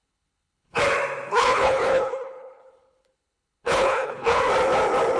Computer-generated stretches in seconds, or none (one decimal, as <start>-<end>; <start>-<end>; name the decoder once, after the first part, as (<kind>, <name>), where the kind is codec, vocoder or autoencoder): 0.0-0.8 (codec, HILCodec); 1.3-4.4